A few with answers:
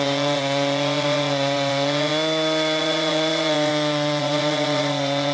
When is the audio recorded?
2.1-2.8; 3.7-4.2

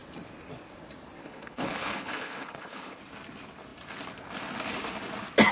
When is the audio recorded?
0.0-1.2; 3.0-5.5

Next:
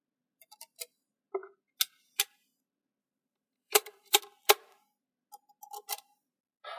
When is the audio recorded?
0.0-3.0; 4.2-6.1